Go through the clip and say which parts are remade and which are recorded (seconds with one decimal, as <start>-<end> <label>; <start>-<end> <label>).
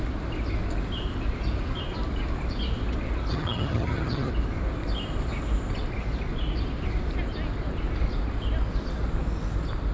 0.0-3.3 recorded; 3.3-4.3 remade; 4.3-9.9 recorded